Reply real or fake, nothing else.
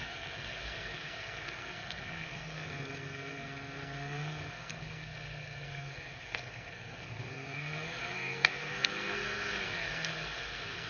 fake